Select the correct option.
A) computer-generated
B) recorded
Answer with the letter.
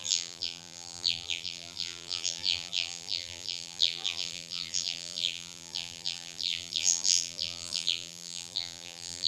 A